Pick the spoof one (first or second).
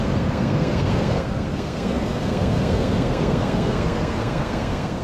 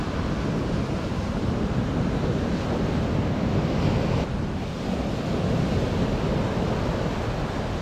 first